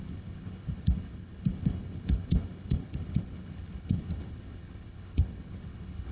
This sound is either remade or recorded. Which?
remade